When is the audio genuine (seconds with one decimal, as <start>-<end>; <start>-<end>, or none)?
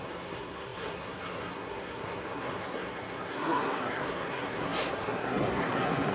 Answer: none